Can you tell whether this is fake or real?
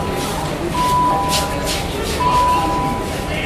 real